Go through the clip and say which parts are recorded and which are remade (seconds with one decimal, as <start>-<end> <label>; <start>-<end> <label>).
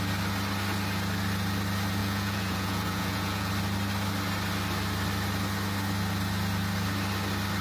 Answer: 0.0-2.0 recorded; 2.0-3.5 remade; 3.5-7.6 recorded